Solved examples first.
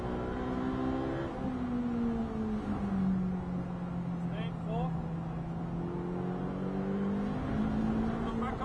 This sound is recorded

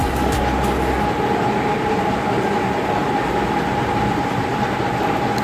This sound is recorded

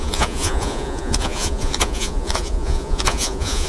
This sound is remade